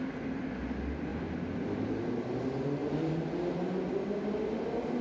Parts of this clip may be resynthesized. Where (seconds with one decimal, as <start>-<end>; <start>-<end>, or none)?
none